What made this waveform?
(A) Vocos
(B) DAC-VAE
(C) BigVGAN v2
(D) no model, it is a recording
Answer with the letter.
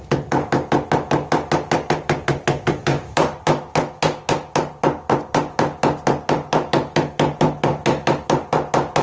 D